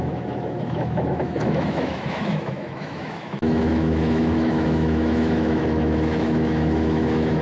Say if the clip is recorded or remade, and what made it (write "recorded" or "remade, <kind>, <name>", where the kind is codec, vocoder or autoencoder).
remade, autoencoder, DAC-VAE